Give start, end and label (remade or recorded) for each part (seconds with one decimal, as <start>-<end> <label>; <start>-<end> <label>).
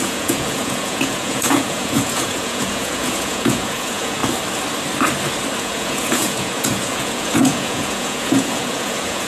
0.0-4.2 remade; 4.2-5.6 recorded; 5.6-9.3 remade